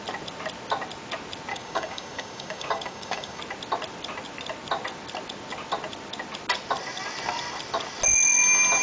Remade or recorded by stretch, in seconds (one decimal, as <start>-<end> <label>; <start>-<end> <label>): 0.0-1.5 recorded; 1.5-3.4 remade; 3.4-8.8 recorded